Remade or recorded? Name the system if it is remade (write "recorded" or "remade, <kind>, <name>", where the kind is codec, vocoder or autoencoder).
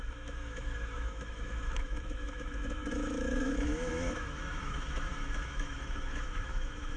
remade, autoencoder, DAC-VAE